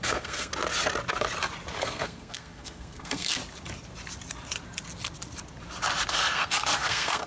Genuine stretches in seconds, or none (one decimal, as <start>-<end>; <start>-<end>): 0.5-1.8; 3.4-6.1